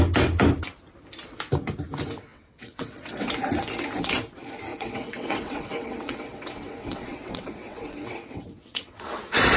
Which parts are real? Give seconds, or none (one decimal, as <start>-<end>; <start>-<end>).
0.0-2.3; 3.3-4.7; 9.0-9.6